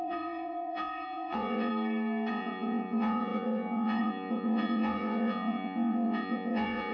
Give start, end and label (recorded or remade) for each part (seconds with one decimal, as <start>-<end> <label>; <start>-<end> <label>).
0.0-1.7 remade; 1.7-2.3 recorded; 2.3-6.9 remade